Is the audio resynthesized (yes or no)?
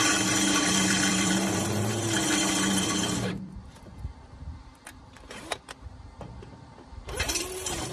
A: yes